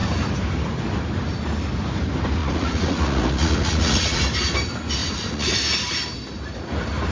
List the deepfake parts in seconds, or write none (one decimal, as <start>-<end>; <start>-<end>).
2.4-4.2; 5.0-5.5